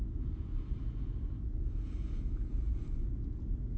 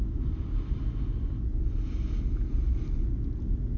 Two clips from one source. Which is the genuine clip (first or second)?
second